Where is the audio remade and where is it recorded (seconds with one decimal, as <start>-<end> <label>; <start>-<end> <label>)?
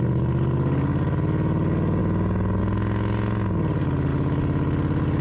0.0-5.2 recorded